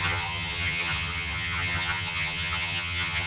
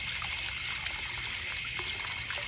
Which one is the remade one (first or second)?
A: first